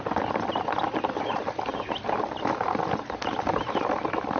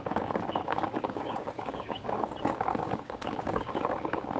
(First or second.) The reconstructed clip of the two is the second